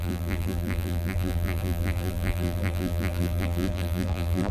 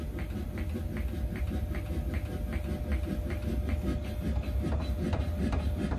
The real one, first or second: second